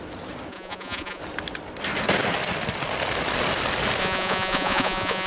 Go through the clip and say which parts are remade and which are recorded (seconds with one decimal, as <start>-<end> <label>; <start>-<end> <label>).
0.0-0.5 recorded; 0.5-1.2 remade; 1.2-4.0 recorded; 4.0-5.3 remade